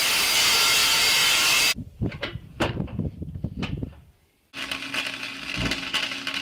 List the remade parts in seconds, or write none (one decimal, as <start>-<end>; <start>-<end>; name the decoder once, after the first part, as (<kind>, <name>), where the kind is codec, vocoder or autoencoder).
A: 0.8-4.6 (vocoder, BigVGAN v2)